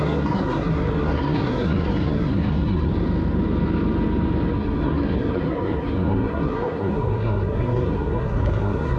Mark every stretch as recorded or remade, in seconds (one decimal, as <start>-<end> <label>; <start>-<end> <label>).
0.0-2.9 remade; 2.9-4.5 recorded; 4.5-9.0 remade